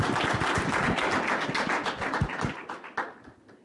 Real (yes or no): yes